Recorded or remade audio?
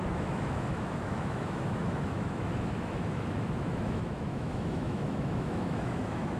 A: remade